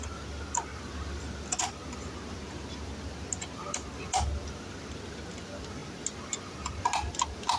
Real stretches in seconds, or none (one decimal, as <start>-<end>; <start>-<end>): 0.0-7.6